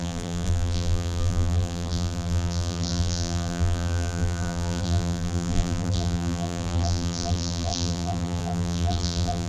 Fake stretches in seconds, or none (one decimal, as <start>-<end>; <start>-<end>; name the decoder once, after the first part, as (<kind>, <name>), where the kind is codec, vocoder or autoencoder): 0.0-9.5 (vocoder, BigVGAN v2)